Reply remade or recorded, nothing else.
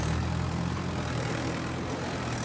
recorded